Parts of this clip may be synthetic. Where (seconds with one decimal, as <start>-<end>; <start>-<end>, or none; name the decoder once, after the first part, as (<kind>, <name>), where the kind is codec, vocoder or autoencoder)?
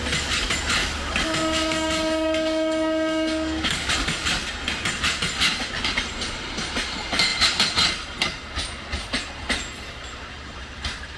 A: 0.8-4.3 (codec, DAC)